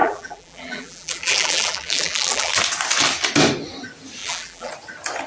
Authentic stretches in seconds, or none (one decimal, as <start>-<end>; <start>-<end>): 2.5-4.2; 4.7-5.3